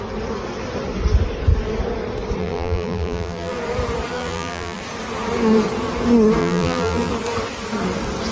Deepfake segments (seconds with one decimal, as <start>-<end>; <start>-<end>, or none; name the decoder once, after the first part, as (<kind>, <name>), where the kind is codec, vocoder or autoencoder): 2.4-3.6 (vocoder, BigVGAN v2); 4.1-4.8; 6.4-7.1